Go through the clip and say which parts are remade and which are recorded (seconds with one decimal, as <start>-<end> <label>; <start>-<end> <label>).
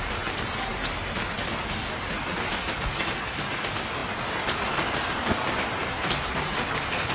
0.0-7.1 recorded